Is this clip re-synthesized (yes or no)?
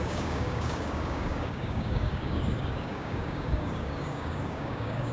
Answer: yes